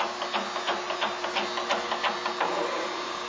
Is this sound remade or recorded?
recorded